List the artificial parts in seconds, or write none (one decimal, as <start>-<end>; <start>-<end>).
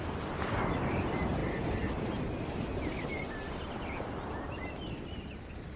none